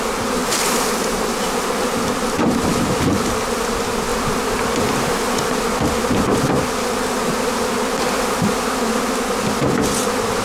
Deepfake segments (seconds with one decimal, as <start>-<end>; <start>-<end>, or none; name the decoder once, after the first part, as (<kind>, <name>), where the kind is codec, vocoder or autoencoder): 0.4-1.7 (vocoder, BigVGAN v2)